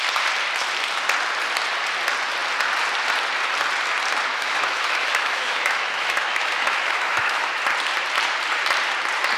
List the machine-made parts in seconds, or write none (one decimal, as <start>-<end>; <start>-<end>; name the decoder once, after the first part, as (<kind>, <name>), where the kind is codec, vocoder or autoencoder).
4.3-7.6 (autoencoder, DAC-VAE)